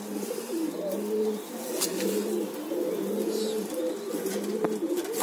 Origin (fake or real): real